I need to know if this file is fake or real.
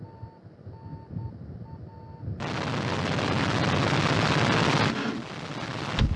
real